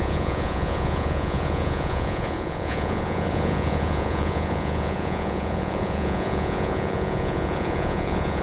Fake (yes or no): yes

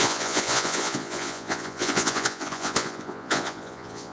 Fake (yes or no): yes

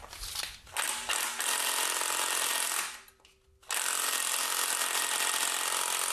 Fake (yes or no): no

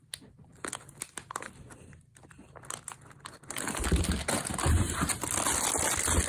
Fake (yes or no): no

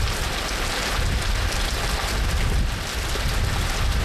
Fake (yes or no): no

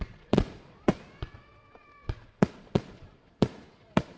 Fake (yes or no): yes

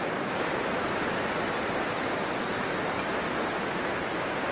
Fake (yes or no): no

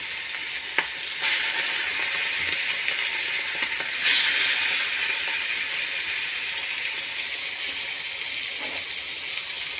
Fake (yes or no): no